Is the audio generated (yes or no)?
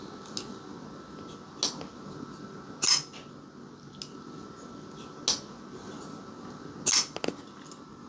no